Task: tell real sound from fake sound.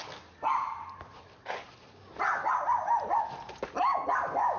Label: real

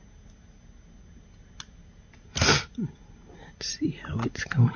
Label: real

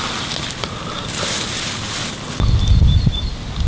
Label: real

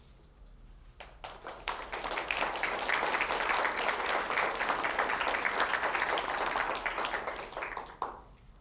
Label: real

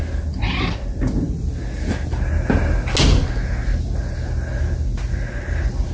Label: real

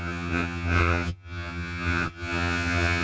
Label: fake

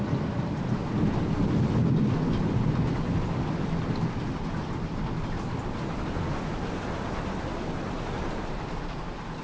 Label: real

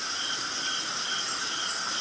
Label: real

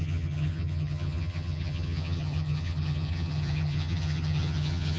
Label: fake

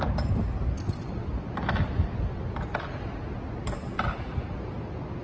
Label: real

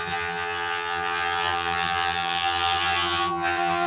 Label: fake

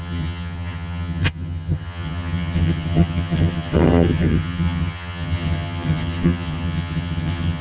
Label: fake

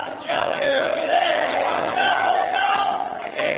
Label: fake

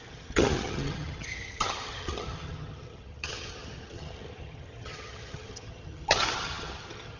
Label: fake